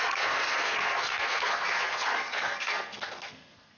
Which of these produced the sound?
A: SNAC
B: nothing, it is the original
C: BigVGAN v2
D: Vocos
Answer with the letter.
A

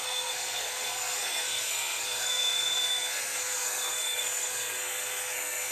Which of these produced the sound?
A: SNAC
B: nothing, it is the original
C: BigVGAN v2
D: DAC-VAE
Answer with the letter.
A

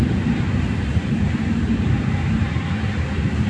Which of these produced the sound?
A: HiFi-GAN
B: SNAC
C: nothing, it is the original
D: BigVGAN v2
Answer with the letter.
C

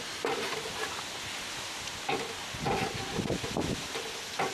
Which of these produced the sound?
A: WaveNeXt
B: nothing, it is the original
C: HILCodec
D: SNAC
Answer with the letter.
B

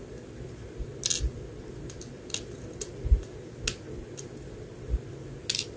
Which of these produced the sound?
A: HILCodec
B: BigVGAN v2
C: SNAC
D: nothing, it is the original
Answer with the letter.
D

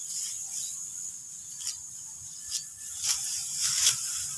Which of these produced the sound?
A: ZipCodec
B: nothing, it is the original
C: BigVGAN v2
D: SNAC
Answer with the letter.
B